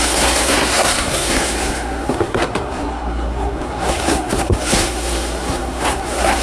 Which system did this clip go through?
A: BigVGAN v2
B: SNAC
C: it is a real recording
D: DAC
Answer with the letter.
B